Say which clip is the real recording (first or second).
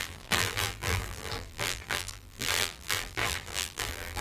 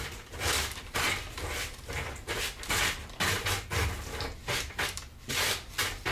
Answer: second